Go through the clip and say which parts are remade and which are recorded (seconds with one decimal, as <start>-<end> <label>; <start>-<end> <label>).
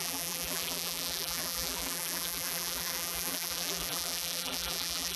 0.0-5.2 remade